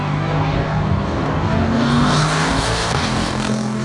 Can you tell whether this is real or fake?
fake